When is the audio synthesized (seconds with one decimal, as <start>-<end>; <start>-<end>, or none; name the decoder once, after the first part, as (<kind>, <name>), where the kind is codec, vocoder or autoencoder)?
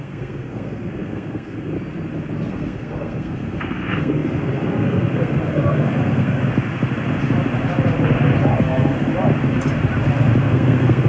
0.0-1.7 (codec, SNAC); 2.5-6.4; 8.5-9.1; 10.4-11.1